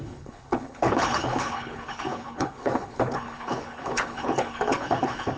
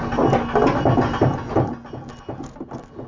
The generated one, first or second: first